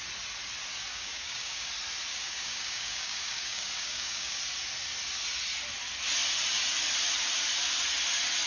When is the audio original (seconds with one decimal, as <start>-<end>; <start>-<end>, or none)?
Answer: 0.0-0.9; 1.7-2.1; 4.4-8.5